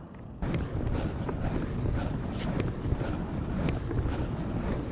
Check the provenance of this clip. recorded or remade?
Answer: recorded